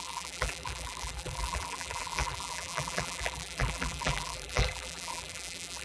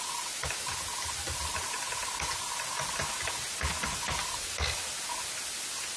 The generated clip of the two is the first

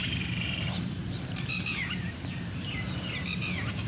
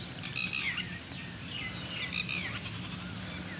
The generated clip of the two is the first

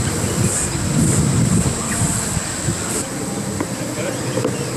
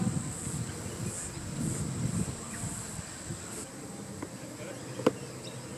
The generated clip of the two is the first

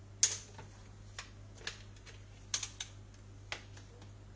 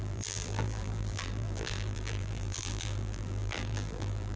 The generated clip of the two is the second